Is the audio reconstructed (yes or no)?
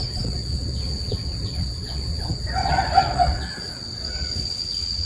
yes